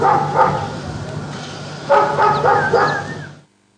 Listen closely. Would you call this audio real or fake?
real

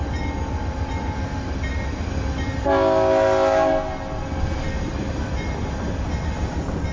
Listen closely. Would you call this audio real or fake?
real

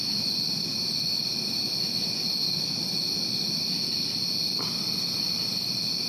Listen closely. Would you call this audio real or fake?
real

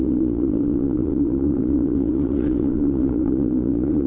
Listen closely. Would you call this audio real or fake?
fake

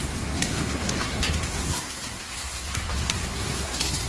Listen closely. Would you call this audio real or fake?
fake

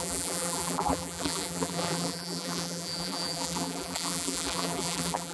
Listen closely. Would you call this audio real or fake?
fake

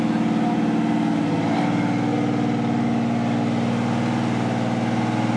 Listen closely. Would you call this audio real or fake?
real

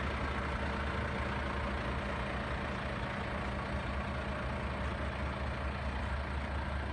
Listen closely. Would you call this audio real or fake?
real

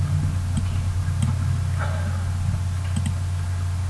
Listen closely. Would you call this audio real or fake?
real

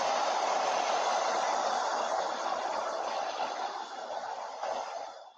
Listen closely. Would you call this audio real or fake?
fake